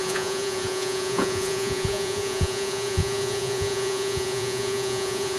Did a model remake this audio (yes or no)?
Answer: yes